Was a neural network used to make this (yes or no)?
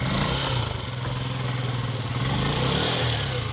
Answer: no